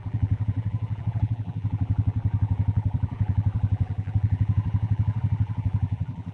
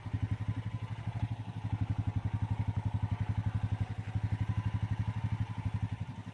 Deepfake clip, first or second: first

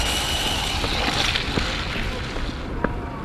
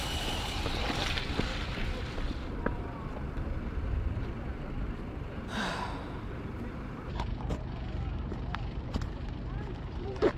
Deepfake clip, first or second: second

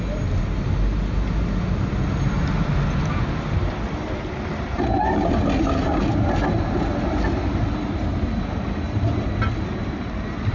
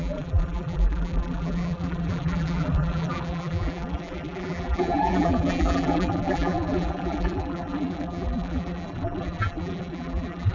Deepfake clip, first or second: second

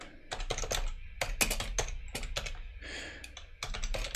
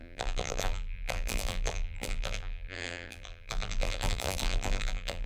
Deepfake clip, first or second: second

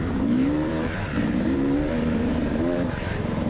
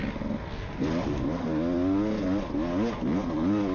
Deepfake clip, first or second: first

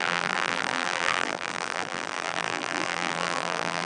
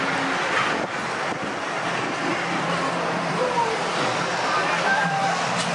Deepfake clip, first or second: first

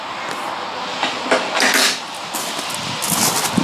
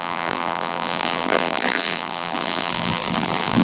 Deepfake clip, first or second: second